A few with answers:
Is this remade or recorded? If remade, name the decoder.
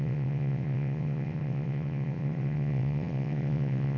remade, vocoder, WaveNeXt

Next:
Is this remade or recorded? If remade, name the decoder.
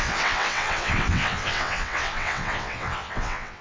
remade, vocoder, WaveNeXt